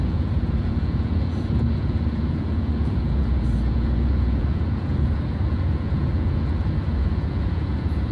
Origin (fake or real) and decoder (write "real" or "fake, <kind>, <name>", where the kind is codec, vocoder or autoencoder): fake, vocoder, Vocos